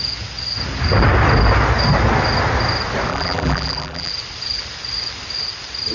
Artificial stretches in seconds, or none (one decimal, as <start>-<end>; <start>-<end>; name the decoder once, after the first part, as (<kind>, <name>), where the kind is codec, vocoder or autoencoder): 3.1-4.1 (vocoder, BigVGAN v2)